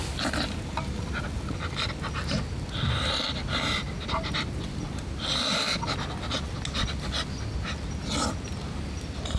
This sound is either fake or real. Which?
real